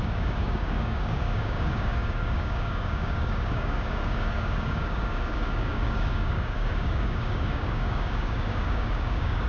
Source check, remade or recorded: remade